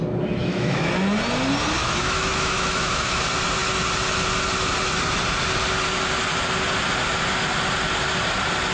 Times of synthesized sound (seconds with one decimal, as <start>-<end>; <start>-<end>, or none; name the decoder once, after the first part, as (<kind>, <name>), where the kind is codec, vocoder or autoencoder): 0.4-0.9 (autoencoder, DAC-VAE); 1.8-3.2